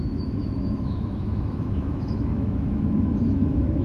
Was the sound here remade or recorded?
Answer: remade